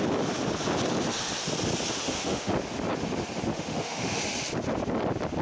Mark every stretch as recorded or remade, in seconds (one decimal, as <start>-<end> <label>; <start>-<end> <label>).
0.0-1.9 recorded; 1.9-2.5 remade; 2.5-3.5 recorded; 3.5-4.2 remade; 4.2-5.4 recorded